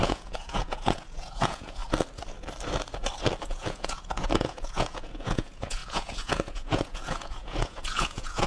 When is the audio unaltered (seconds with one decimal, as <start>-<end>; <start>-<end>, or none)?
1.8-3.4